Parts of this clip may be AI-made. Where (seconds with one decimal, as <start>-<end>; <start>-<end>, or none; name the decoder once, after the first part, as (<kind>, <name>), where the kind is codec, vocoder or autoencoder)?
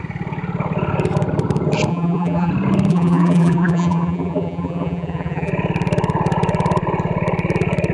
1.9-2.5 (vocoder, BigVGAN v2); 2.9-5.5